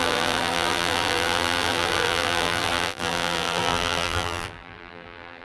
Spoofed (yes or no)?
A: yes